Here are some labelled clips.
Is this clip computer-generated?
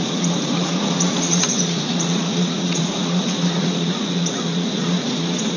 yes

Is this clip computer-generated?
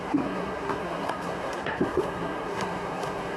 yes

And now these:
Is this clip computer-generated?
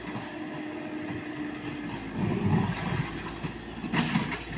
no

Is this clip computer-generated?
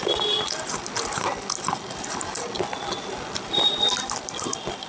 no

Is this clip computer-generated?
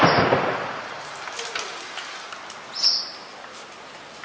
no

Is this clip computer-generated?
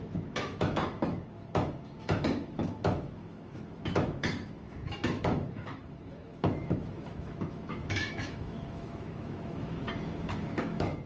yes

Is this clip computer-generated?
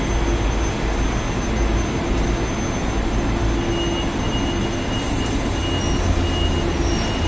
no